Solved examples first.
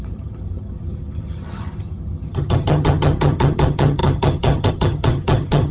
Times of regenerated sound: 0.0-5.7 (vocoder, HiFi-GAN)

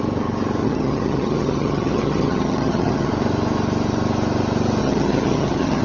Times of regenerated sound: 0.6-3.1 (vocoder, HiFi-GAN); 4.8-5.8

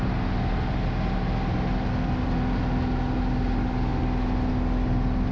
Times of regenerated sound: none

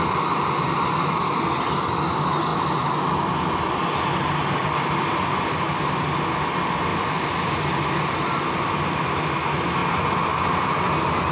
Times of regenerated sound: none

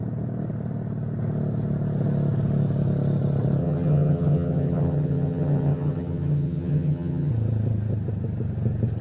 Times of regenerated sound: 3.6-7.3 (vocoder, HiFi-GAN)